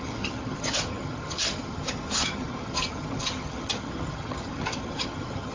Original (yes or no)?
no